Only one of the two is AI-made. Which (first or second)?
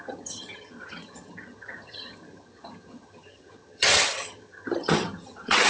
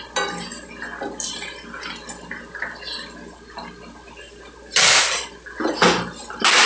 first